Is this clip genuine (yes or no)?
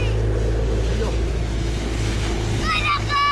yes